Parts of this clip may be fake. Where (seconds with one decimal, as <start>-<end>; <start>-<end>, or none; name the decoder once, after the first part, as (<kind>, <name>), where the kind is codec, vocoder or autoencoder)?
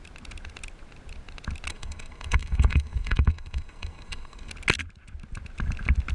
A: 1.7-4.5 (codec, SNAC)